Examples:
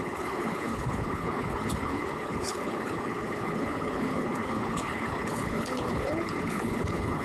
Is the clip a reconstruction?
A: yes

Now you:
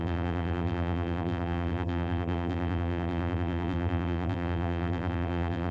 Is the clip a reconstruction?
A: yes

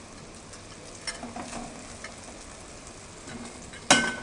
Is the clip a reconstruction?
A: no